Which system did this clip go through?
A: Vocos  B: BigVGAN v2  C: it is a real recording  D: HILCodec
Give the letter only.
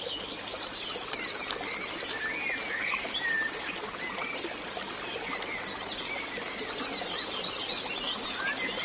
C